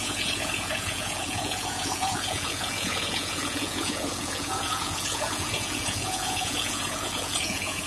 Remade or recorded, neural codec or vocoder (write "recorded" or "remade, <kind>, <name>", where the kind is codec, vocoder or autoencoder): remade, vocoder, Vocos